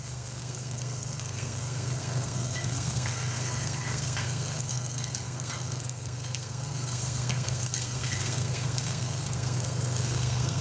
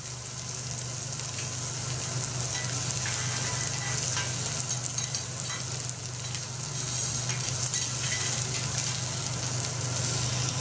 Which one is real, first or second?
second